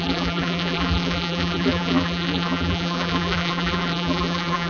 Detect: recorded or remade remade